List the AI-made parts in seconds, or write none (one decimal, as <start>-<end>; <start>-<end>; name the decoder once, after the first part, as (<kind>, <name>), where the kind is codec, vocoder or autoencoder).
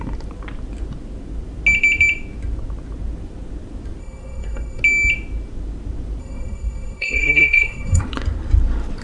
4.0-4.8 (codec, SNAC); 6.2-8.0